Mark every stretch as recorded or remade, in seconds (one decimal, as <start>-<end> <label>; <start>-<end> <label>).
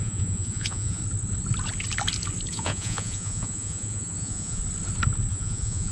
0.0-1.0 remade; 1.0-2.5 recorded; 2.5-4.6 remade; 4.6-5.3 recorded; 5.3-5.9 remade